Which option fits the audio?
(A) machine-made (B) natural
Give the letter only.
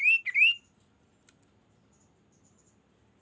B